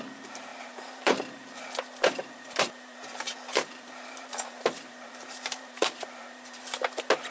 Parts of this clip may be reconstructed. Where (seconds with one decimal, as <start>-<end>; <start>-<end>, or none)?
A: 0.5-1.7; 2.2-6.6